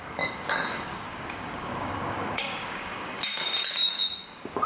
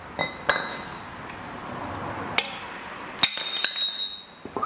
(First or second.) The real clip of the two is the second